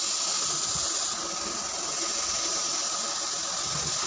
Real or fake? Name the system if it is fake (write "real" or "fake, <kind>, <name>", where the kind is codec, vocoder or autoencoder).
real